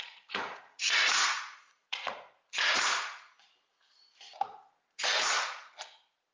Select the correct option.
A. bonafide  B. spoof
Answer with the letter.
B